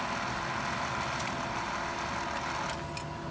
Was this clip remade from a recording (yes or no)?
no